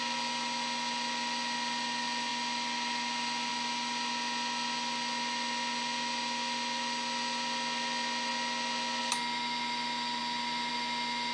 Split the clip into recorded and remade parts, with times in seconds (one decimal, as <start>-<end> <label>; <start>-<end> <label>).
0.0-11.3 recorded